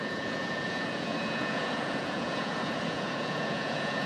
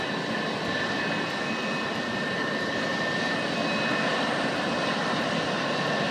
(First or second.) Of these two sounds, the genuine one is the second